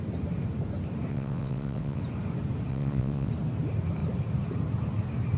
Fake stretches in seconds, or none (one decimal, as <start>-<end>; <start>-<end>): 1.1-2.0; 2.7-3.3